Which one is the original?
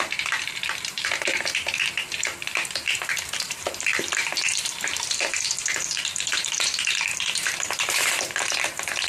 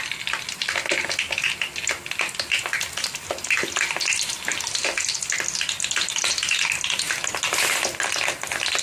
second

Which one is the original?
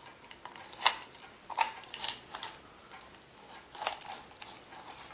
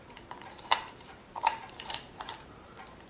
first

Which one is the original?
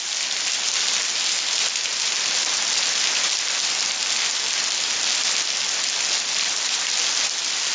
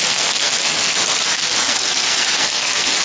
first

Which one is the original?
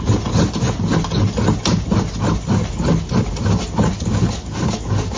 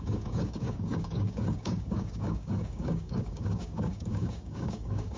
first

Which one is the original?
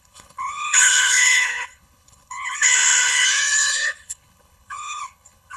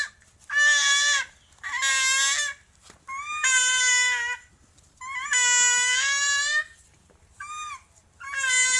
second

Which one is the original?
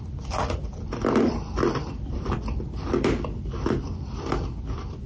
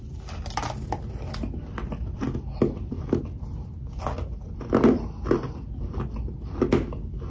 second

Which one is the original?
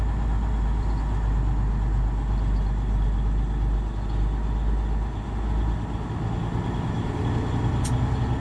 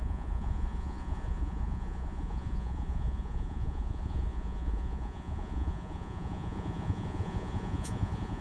first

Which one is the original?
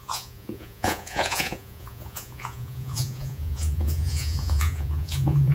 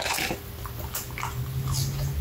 second